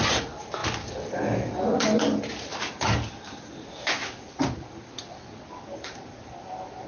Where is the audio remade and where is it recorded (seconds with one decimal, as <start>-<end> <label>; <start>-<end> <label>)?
0.0-6.9 recorded